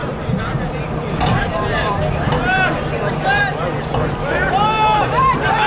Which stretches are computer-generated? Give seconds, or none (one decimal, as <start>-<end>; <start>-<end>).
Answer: 0.0-3.1; 3.7-4.5